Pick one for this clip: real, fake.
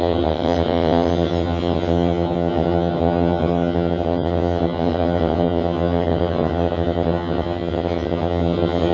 fake